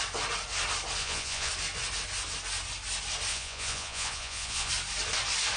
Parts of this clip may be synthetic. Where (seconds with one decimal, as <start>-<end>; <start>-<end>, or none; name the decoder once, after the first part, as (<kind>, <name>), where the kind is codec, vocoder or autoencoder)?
1.0-1.5 (vocoder, Vocos); 3.3-4.7